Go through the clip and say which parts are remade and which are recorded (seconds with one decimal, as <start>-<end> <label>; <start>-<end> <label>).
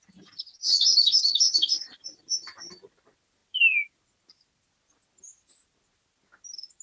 0.0-6.8 recorded